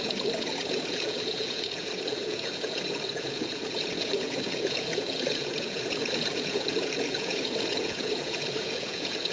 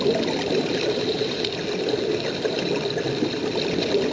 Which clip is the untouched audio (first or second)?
second